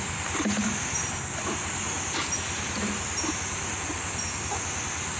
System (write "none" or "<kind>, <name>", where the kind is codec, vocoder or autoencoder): none